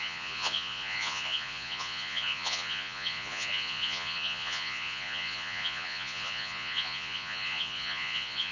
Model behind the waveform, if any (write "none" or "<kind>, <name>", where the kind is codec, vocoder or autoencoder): vocoder, Vocos